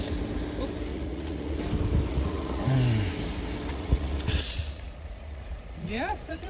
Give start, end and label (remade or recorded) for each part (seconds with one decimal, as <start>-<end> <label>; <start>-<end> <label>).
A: 0.0-0.9 recorded; 0.9-1.6 remade; 1.6-2.1 recorded; 2.1-2.6 remade; 2.6-3.7 recorded; 3.7-6.5 remade